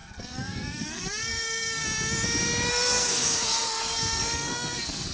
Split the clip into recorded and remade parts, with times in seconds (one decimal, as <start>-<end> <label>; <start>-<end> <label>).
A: 0.0-1.8 remade; 1.8-2.7 recorded; 2.7-5.1 remade